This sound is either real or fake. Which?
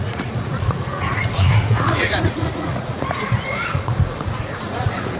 fake